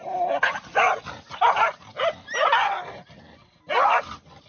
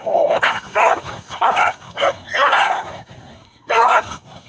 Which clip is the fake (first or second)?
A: second